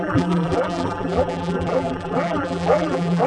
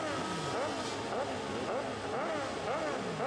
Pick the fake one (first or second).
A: first